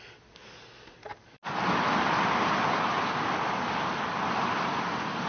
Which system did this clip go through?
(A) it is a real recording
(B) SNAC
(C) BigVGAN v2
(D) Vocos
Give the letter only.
A